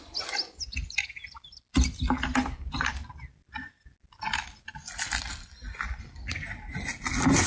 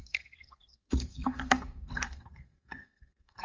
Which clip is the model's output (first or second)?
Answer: second